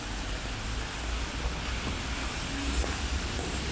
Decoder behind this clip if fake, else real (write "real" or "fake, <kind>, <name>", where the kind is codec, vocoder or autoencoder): real